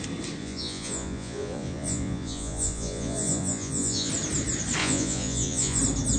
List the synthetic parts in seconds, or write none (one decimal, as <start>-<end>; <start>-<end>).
0.4-4.1; 4.8-5.8